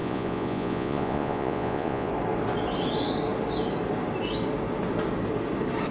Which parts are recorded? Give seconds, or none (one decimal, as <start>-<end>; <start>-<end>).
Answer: 2.1-5.9